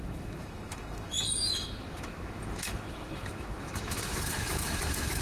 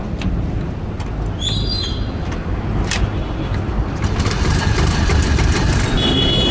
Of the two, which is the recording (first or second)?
second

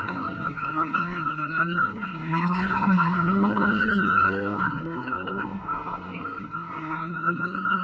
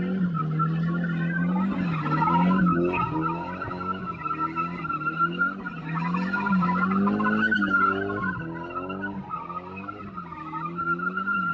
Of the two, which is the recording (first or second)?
second